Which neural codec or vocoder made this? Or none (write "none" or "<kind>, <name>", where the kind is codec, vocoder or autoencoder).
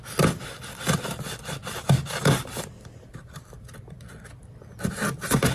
none